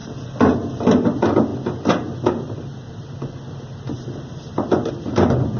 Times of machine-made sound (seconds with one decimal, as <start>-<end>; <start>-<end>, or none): none